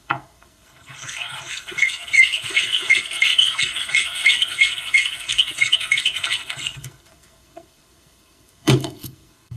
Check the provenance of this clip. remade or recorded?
remade